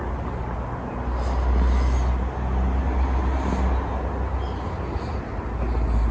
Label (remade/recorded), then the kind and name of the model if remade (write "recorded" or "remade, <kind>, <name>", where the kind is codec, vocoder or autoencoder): recorded